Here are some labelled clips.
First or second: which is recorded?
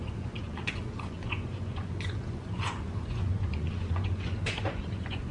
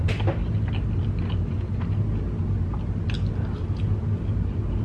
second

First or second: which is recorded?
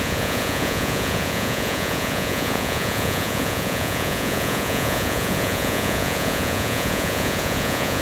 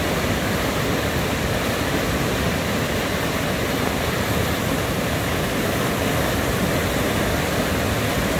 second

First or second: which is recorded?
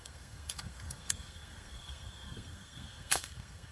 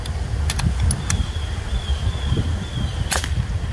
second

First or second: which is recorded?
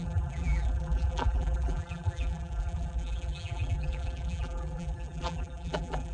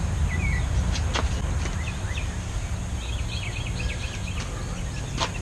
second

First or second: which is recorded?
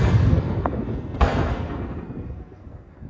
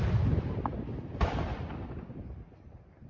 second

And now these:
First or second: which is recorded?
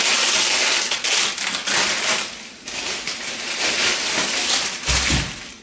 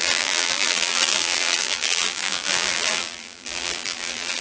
first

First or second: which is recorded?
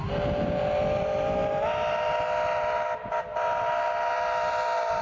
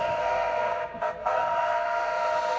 first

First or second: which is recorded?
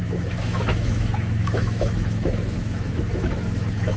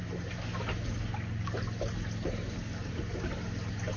second